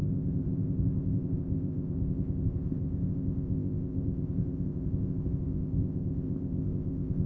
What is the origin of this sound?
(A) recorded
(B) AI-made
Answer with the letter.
B